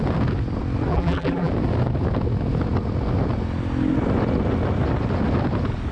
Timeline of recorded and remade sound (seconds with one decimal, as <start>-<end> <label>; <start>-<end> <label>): 0.0-0.9 recorded; 0.9-1.5 remade; 1.5-5.9 recorded